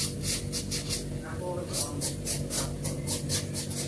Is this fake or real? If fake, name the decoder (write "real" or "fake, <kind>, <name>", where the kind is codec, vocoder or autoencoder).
real